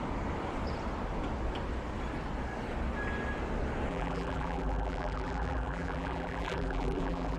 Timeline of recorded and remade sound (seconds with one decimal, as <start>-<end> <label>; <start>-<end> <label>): 0.0-3.9 recorded; 3.9-7.4 remade

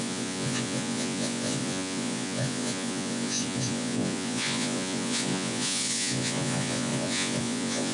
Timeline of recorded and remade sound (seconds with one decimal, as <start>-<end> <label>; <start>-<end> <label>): 0.0-7.9 remade

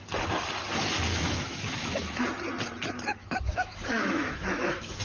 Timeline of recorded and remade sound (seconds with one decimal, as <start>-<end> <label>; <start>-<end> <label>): 0.0-1.1 recorded; 1.1-2.2 remade; 2.2-3.2 recorded; 3.2-5.0 remade

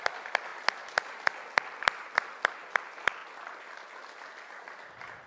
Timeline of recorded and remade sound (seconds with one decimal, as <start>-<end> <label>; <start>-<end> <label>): 0.0-5.3 recorded

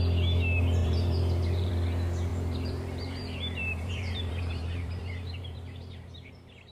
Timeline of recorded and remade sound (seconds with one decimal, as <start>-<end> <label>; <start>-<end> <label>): 0.0-0.8 recorded; 0.8-1.7 remade; 1.7-2.3 recorded; 2.3-6.3 remade; 6.3-6.7 recorded